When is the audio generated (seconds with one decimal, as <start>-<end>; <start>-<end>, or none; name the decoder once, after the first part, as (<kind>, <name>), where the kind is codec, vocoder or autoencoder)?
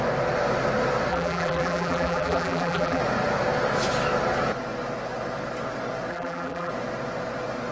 1.1-3.0 (vocoder, BigVGAN v2); 6.1-6.7